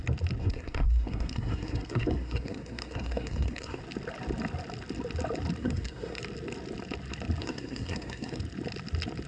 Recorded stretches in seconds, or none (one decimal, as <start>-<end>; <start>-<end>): 0.0-0.4; 3.8-5.6; 6.2-7.4; 8.4-9.3